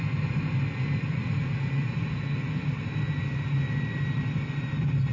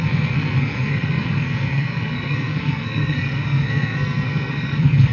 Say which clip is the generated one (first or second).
second